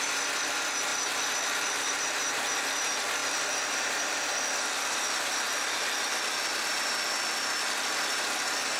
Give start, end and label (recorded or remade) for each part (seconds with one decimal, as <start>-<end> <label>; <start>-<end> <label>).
0.0-8.8 recorded